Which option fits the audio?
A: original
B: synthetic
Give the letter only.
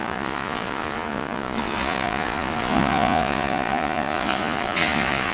B